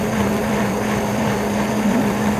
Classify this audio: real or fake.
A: fake